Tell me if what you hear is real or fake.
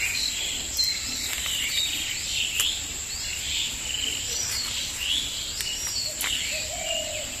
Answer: real